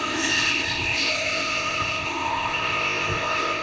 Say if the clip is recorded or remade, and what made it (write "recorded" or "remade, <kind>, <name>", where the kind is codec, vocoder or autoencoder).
remade, codec, ZipCodec